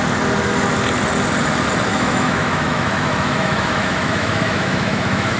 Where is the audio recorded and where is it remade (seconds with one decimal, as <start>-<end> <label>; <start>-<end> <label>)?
0.0-1.9 recorded; 1.9-5.4 remade